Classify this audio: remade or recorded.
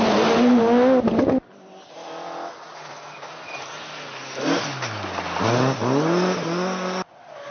recorded